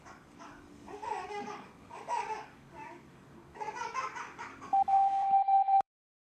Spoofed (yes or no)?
yes